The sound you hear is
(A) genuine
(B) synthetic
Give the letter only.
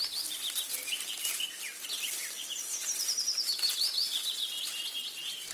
A